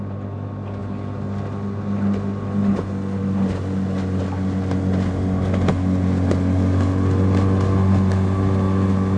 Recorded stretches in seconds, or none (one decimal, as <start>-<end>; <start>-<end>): 0.0-9.2